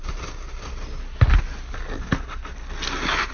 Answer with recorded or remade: recorded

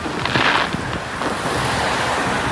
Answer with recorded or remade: recorded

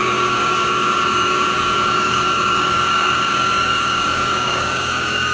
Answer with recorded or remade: remade